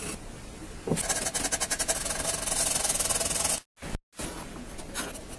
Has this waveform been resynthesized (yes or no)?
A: no